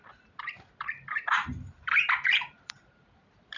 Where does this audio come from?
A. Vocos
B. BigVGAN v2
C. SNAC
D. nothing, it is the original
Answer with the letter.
B